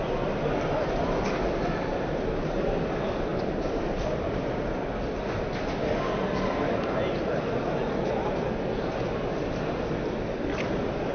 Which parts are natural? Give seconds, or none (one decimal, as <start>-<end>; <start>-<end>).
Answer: 0.0-11.1